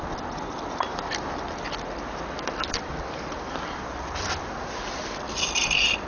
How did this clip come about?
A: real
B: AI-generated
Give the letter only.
B